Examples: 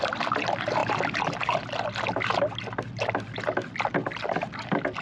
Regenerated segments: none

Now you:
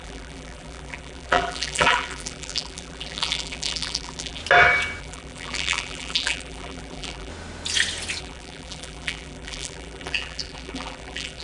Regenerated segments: 0.0-4.4 (vocoder, BigVGAN v2); 5.0-7.3; 8.2-11.4

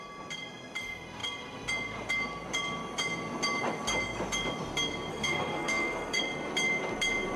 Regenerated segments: 5.1-6.2 (codec, SNAC)

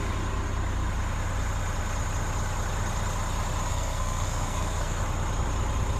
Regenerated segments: 3.7-5.0 (codec, SNAC)

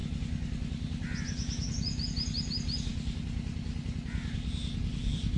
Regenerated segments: none